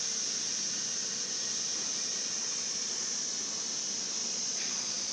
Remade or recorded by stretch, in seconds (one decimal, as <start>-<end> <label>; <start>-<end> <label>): 0.0-2.4 recorded; 2.4-3.4 remade; 3.4-4.2 recorded; 4.2-5.1 remade